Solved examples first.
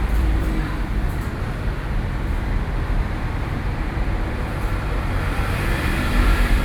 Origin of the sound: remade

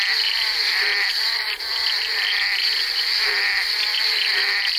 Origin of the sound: remade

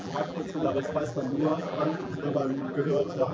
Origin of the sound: remade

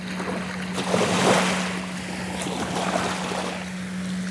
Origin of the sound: recorded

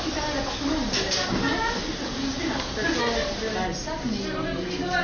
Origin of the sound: recorded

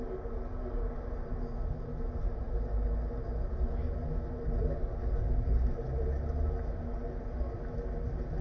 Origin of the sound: recorded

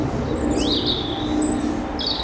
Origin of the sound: recorded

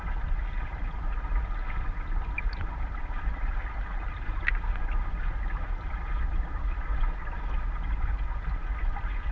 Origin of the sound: recorded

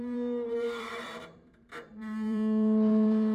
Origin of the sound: remade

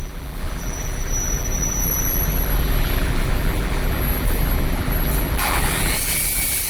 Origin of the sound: remade